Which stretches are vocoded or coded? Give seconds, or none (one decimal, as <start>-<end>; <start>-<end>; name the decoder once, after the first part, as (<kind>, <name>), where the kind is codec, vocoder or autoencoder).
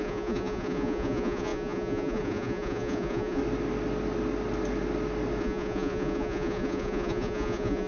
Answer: 0.0-3.4 (vocoder, Vocos); 5.4-7.9